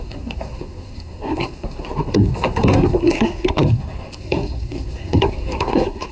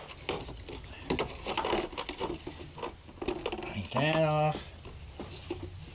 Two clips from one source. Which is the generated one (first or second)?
first